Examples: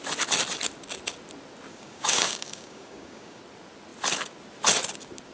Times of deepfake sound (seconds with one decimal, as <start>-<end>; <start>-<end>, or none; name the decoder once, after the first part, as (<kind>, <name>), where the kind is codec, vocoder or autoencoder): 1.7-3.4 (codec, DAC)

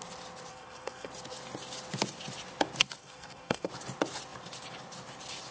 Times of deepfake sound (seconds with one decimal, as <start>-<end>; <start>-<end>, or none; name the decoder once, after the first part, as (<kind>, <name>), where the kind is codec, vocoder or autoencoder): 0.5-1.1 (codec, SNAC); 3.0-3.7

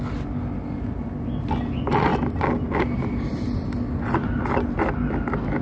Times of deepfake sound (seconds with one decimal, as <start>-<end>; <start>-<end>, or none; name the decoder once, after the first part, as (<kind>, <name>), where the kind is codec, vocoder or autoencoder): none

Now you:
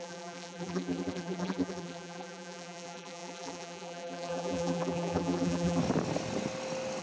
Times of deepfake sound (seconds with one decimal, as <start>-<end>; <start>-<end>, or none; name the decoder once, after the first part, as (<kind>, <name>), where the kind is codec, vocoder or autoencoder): 0.0-5.8 (vocoder, BigVGAN v2)